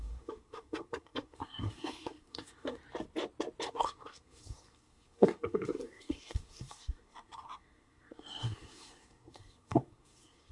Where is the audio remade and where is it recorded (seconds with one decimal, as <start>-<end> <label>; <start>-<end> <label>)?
0.0-2.8 remade; 2.8-3.7 recorded; 3.7-10.5 remade